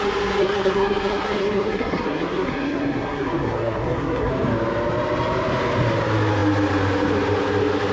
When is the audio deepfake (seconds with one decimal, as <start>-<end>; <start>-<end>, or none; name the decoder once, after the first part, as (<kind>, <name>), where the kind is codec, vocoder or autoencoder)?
0.4-4.3 (codec, SNAC)

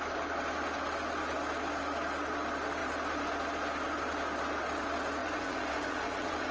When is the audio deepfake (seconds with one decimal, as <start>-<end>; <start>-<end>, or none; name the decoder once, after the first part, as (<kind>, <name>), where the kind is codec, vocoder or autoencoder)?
5.2-6.5 (vocoder, Vocos)

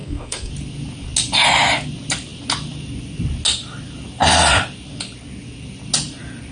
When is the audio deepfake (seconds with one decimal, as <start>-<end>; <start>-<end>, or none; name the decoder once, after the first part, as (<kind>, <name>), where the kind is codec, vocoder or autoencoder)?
0.0-0.5 (codec, SNAC)